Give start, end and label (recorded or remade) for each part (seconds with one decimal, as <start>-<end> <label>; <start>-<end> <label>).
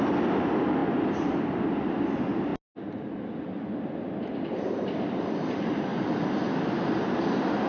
0.0-7.7 recorded